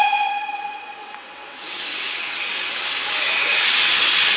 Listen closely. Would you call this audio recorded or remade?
remade